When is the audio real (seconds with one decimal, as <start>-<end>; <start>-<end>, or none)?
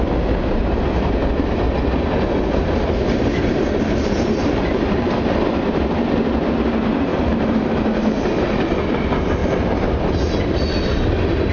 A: 0.0-4.4; 5.3-7.1; 8.8-9.4; 9.9-11.5